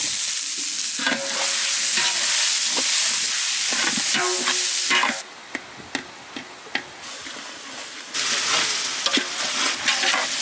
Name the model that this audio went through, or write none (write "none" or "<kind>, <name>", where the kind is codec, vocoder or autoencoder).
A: none